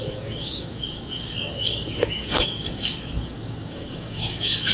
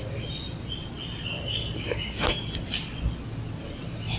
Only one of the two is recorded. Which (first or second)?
second